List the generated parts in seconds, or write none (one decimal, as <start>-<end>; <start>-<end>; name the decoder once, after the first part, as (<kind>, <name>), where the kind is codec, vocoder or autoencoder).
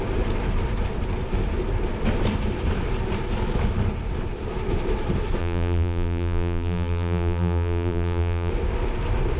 5.4-8.5 (vocoder, BigVGAN v2)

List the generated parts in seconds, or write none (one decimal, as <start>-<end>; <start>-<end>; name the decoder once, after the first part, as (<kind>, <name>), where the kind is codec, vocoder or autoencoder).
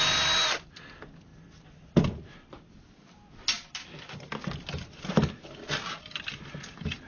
none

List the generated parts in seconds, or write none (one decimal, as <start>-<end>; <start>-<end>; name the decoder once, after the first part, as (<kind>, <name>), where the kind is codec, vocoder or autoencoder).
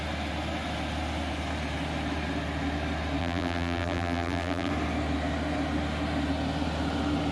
3.2-4.7 (vocoder, BigVGAN v2)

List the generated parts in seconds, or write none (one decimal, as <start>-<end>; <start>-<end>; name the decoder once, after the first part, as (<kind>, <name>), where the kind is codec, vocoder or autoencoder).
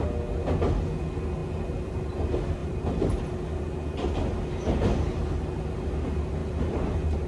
2.6-3.2 (vocoder, BigVGAN v2); 6.4-7.3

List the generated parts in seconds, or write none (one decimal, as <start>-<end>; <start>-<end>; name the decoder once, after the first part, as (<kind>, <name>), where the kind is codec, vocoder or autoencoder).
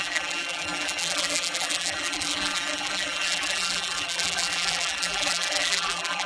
0.0-6.3 (vocoder, BigVGAN v2)